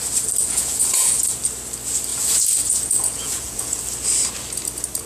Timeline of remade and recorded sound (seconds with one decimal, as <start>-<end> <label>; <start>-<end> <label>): 0.0-0.4 recorded; 0.4-1.4 remade; 1.4-2.1 recorded; 2.1-3.8 remade; 3.8-5.1 recorded